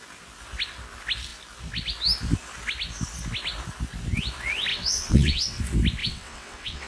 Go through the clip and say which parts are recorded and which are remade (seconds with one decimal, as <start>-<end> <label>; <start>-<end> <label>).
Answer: 0.0-4.7 recorded; 4.7-5.6 remade; 5.6-6.0 recorded; 6.0-6.9 remade